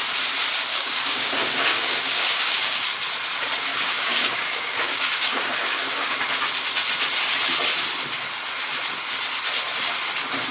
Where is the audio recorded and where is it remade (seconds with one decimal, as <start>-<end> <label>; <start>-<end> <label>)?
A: 0.0-0.7 recorded; 0.7-2.9 remade; 2.9-3.7 recorded; 3.7-6.2 remade; 6.2-10.5 recorded

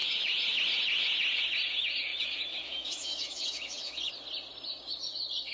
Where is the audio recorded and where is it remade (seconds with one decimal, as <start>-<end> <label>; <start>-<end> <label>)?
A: 0.0-0.6 remade; 0.6-2.1 recorded; 2.1-4.1 remade; 4.1-5.5 recorded

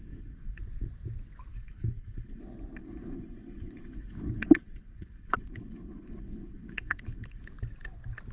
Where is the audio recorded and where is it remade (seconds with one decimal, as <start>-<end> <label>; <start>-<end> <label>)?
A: 0.0-0.6 remade; 0.6-1.5 recorded; 1.5-2.4 remade; 2.4-2.8 recorded; 2.8-7.5 remade; 7.5-8.3 recorded

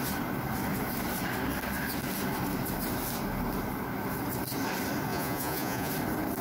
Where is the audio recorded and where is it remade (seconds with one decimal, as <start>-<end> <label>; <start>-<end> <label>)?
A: 0.0-5.1 recorded; 5.1-5.9 remade; 5.9-6.4 recorded

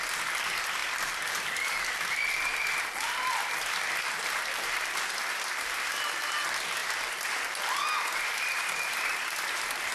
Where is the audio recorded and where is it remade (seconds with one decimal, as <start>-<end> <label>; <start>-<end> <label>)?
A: 0.0-6.8 remade; 6.8-8.2 recorded; 8.2-9.9 remade

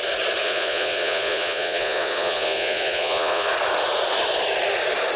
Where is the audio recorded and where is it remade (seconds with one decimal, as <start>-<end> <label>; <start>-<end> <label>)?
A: 0.0-0.4 recorded; 0.4-3.5 remade; 3.5-5.2 recorded

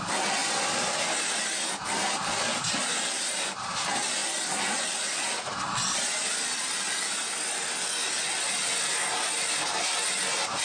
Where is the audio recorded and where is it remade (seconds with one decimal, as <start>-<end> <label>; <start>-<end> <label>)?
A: 0.0-10.6 recorded